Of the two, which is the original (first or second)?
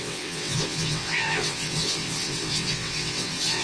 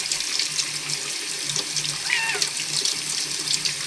second